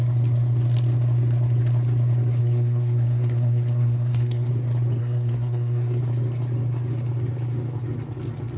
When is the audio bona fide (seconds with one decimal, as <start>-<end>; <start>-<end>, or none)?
0.0-2.4; 4.5-5.0; 6.0-8.6